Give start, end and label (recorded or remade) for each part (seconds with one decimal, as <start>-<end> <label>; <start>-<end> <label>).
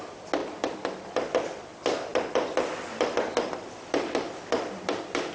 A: 0.0-0.4 recorded; 0.4-1.1 remade; 1.1-2.1 recorded; 2.1-5.3 remade